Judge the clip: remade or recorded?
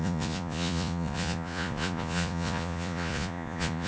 remade